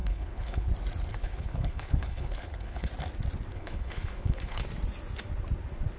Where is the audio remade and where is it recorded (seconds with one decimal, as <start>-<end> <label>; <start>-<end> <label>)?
0.0-0.7 remade; 0.7-1.1 recorded; 1.1-2.9 remade; 2.9-3.5 recorded; 3.5-4.6 remade; 4.6-6.0 recorded